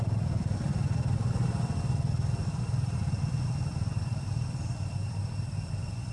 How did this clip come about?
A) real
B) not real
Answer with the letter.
A